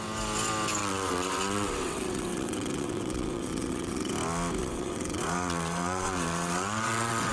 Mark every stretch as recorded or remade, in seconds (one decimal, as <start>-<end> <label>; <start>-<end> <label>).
0.0-0.8 recorded; 0.8-4.1 remade; 4.1-4.6 recorded; 4.6-7.3 remade